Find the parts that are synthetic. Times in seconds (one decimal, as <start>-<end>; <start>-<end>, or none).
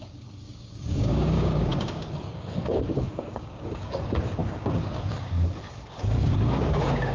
0.0-7.1